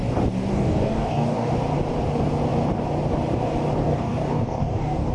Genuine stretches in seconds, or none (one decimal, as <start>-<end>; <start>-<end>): 0.0-0.5; 1.5-3.8